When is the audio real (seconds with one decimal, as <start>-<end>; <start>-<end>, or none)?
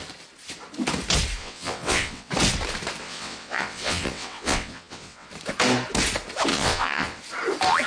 0.0-1.4; 2.3-3.0; 5.3-6.5; 7.2-7.9